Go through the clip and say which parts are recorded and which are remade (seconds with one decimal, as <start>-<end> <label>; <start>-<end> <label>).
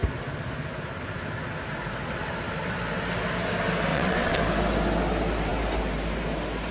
0.0-3.9 recorded; 3.9-4.4 remade; 4.4-6.7 recorded